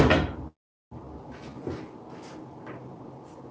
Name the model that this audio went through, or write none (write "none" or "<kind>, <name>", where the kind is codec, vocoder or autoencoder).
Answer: none